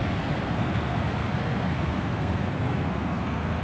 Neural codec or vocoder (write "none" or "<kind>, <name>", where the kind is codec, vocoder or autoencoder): codec, SNAC